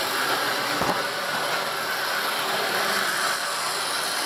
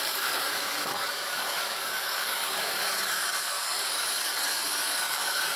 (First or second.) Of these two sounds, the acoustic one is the first